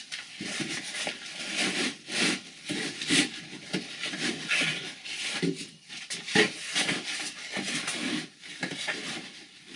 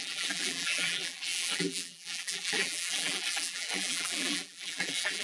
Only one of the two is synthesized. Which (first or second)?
second